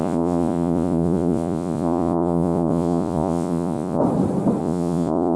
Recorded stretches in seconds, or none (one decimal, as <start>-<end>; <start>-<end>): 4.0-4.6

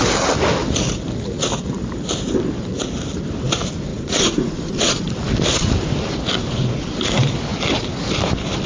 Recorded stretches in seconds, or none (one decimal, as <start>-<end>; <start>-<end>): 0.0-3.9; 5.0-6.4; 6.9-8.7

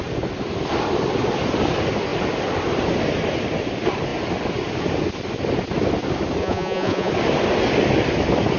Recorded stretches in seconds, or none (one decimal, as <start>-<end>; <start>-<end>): 0.0-6.4; 7.1-8.6

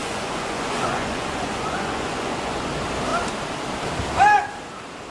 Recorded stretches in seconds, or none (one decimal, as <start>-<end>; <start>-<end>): 2.7-5.1